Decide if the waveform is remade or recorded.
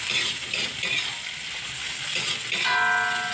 recorded